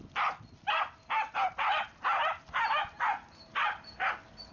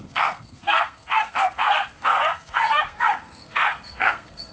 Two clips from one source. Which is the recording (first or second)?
first